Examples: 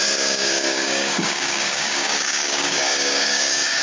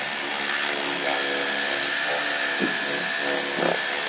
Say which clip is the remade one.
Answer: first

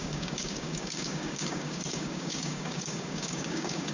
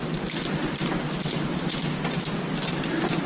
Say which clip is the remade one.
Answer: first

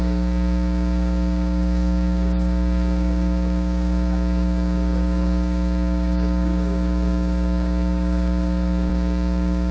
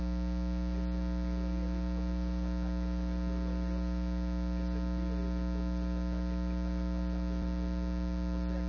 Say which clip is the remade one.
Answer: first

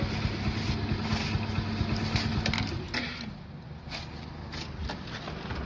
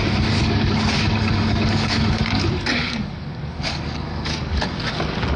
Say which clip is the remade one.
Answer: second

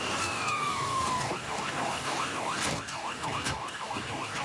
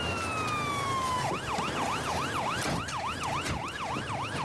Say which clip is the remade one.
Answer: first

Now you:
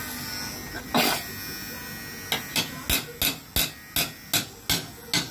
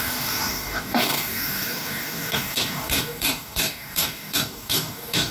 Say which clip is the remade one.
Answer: second